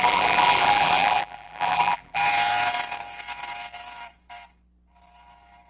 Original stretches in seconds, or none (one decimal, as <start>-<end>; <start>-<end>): 2.2-5.7